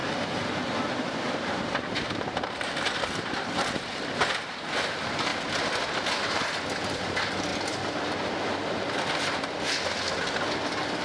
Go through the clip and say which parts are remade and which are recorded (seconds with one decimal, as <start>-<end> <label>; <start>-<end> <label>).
0.0-1.0 recorded; 1.0-5.3 remade; 5.3-6.2 recorded; 6.2-7.5 remade; 7.5-11.0 recorded